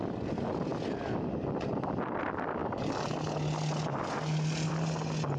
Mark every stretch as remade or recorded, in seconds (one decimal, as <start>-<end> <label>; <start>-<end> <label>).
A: 0.0-5.4 recorded